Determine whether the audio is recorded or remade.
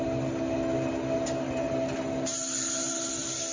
recorded